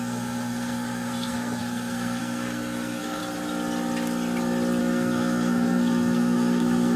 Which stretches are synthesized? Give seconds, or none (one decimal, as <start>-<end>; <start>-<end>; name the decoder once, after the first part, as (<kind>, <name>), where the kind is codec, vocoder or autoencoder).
0.0-3.2 (codec, SNAC); 4.8-7.0